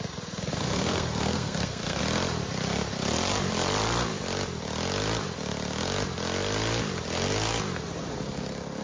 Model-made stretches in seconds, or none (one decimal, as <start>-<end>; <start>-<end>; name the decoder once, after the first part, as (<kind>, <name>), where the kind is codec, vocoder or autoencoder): 0.5-2.0 (codec, SNAC)